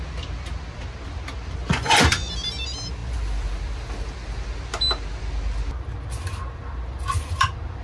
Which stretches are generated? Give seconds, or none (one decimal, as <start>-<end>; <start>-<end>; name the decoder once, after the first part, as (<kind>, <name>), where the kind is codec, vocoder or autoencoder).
1.6-2.3 (vocoder, Vocos)